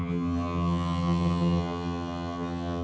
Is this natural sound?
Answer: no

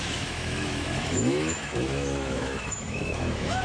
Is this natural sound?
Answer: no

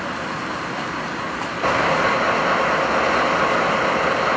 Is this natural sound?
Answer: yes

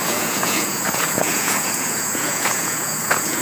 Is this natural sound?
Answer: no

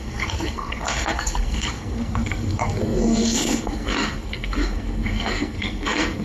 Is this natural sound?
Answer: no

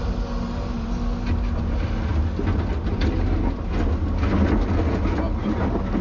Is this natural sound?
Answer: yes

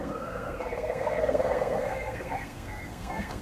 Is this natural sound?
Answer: no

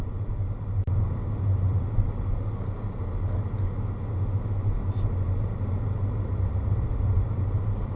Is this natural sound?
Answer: yes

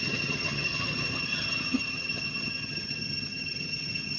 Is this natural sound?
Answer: no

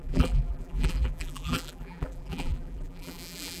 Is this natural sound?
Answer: no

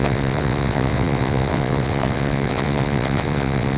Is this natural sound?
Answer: no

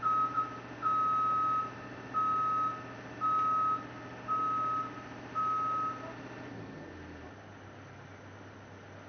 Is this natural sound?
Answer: yes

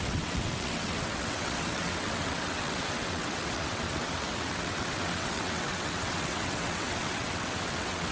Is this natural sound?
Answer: no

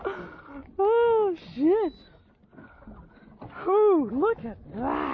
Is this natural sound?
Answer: yes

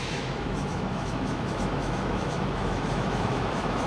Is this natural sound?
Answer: no